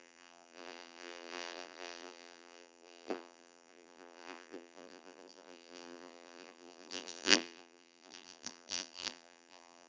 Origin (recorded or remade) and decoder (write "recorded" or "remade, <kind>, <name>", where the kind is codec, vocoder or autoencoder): remade, vocoder, BigVGAN v2